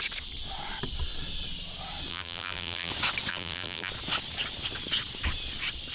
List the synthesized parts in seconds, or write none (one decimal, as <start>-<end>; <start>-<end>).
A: 2.1-2.9; 3.3-3.9

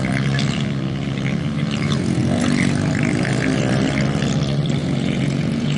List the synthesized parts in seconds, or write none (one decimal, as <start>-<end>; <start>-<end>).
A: 4.8-5.8